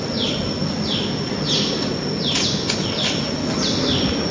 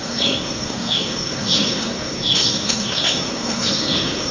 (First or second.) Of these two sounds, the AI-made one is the second